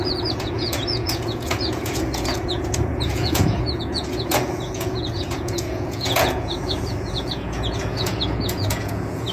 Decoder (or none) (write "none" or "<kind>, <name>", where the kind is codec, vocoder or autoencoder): vocoder, Vocos